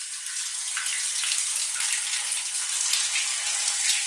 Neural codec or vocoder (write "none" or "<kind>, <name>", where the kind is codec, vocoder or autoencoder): none